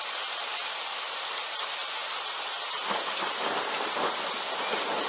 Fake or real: real